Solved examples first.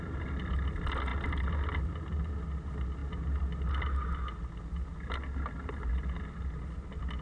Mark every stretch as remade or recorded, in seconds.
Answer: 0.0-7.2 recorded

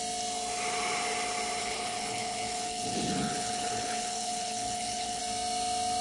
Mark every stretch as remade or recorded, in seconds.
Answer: 0.0-1.6 recorded; 1.6-5.2 remade; 5.2-6.0 recorded

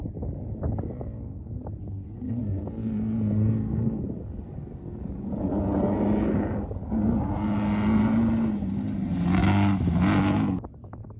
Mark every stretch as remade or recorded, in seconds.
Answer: 0.0-1.8 recorded; 1.8-2.4 remade; 2.4-11.2 recorded